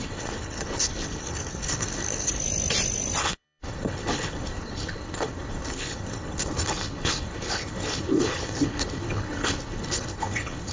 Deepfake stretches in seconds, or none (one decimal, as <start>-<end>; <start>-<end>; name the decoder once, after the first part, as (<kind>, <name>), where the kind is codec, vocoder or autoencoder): 0.0-2.4 (codec, HILCodec); 3.2-10.7